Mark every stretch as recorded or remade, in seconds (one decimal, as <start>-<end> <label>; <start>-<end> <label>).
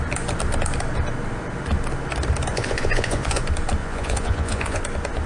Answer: 0.0-2.5 recorded; 2.5-3.4 remade; 3.4-3.8 recorded; 3.8-4.8 remade; 4.8-5.3 recorded